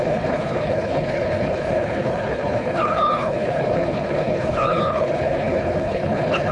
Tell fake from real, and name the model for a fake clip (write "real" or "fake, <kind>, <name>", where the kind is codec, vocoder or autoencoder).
fake, codec, HILCodec